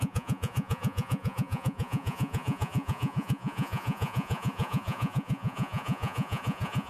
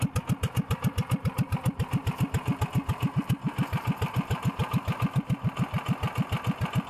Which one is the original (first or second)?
second